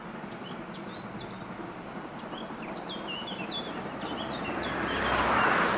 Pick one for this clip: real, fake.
real